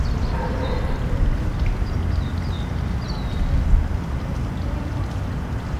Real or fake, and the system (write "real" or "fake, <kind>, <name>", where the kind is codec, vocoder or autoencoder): real